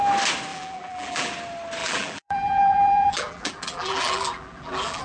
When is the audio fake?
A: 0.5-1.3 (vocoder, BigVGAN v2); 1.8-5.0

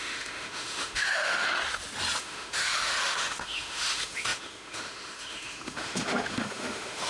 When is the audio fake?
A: 0.0-1.5 (autoencoder, DAC-VAE); 2.2-7.1

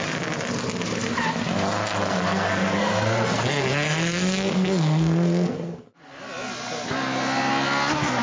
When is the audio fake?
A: 2.0-5.9 (codec, SNAC)

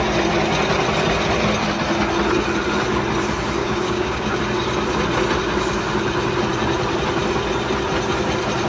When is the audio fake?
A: 3.6-4.4 (codec, DAC)